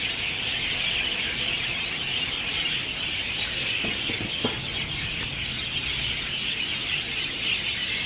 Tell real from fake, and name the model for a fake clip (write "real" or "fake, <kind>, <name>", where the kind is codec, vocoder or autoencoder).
real